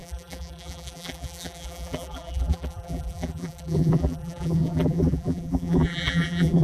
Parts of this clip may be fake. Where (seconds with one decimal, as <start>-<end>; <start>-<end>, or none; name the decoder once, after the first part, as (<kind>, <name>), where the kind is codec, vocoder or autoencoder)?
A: 0.0-6.6 (vocoder, BigVGAN v2)